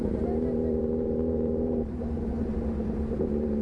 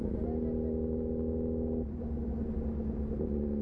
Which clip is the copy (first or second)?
first